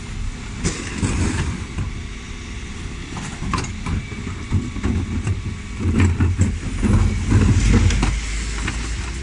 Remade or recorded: recorded